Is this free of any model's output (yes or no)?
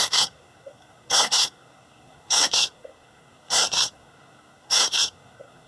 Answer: no